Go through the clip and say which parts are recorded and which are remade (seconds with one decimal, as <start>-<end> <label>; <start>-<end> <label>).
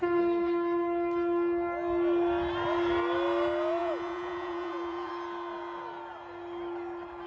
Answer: 0.0-3.8 recorded; 3.8-5.1 remade; 5.1-7.3 recorded